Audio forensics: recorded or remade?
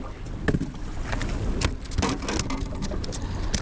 recorded